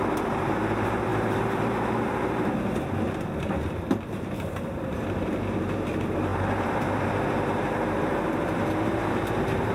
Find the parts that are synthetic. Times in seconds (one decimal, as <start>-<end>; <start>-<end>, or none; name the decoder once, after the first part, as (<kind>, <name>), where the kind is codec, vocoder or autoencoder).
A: 0.0-9.7 (vocoder, BigVGAN v2)